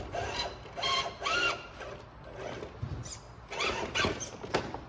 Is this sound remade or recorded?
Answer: recorded